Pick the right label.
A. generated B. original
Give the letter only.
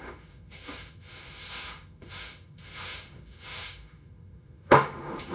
A